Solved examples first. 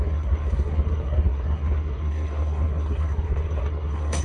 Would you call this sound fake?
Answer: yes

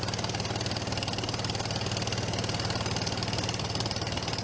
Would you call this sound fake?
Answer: no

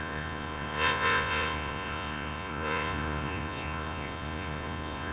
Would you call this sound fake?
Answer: yes